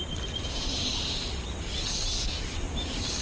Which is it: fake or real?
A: real